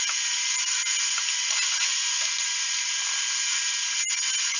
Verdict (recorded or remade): recorded